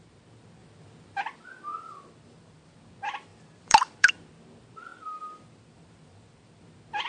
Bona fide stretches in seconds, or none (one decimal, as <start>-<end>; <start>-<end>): 0.0-1.7; 2.6-3.3; 4.1-4.9; 6.5-7.1